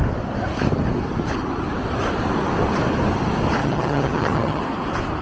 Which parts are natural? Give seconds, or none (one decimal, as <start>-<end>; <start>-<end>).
0.0-3.6; 4.6-5.2